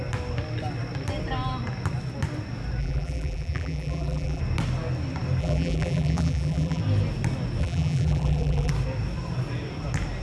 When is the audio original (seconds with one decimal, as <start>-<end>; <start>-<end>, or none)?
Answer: 0.0-2.8; 4.4-5.4; 6.8-7.6; 8.7-10.2